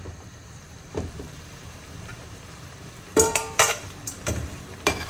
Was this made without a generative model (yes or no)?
no